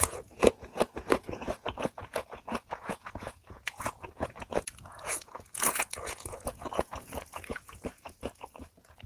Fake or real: fake